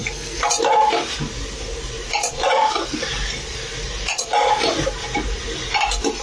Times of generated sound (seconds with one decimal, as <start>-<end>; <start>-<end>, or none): 0.0-0.5